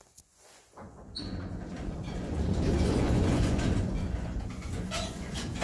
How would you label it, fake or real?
fake